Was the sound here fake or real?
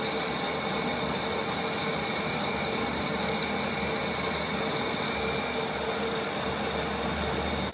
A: real